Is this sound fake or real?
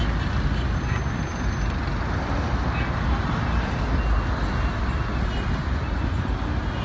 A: real